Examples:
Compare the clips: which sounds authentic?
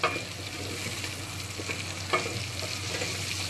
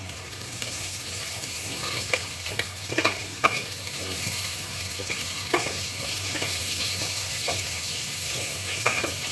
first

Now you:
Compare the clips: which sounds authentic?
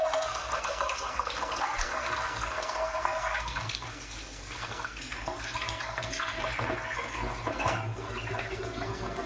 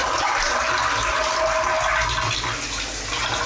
second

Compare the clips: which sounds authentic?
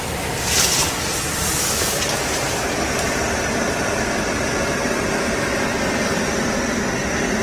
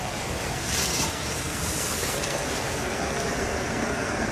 first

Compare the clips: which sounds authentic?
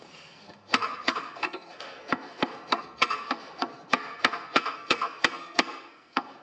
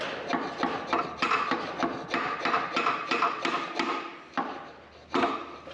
second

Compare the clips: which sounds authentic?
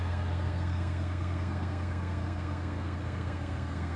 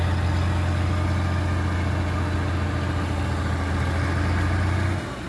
second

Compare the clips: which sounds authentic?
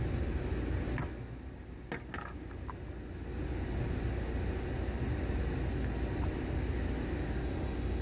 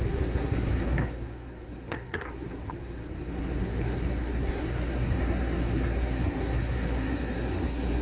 first